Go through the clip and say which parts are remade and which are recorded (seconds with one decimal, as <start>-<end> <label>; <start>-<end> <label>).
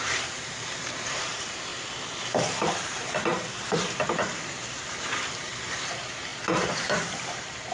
0.0-1.7 remade; 1.7-2.4 recorded; 2.4-7.7 remade